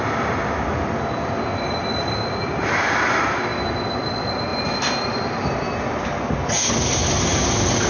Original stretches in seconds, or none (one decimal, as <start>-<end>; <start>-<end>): 0.0-7.9